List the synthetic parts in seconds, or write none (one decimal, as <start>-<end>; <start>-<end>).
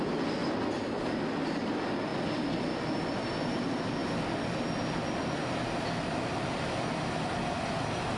none